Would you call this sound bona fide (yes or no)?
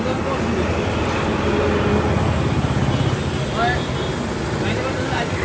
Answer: yes